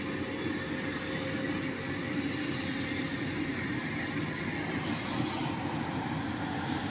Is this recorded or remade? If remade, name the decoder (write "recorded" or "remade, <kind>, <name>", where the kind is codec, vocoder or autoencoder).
recorded